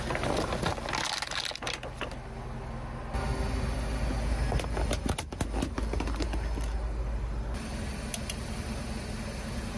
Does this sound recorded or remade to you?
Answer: recorded